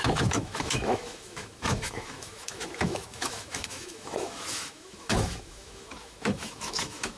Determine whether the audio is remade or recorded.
remade